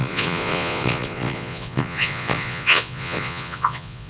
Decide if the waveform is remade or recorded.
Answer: remade